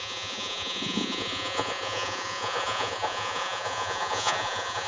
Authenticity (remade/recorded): remade